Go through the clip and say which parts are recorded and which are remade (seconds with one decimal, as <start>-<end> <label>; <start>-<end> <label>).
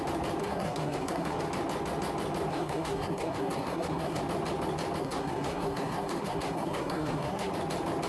0.0-0.4 recorded; 0.4-1.4 remade; 1.4-2.5 recorded; 2.5-4.2 remade; 4.2-5.0 recorded; 5.0-7.5 remade; 7.5-8.1 recorded